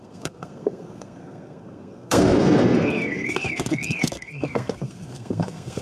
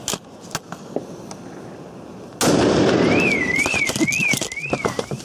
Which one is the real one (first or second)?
second